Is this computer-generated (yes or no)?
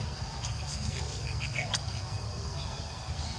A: yes